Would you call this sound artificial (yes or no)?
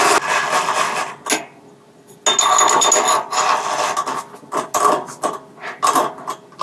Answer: no